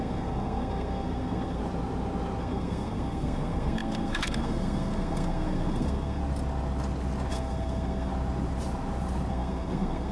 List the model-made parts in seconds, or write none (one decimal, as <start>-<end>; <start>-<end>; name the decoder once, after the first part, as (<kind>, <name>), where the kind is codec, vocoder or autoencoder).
0.0-1.6 (codec, SNAC); 2.4-6.2; 7.3-8.1; 9.3-10.1